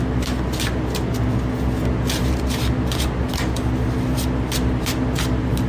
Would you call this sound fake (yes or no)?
no